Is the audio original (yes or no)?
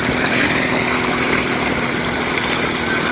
no